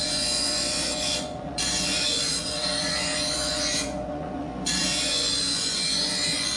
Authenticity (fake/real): fake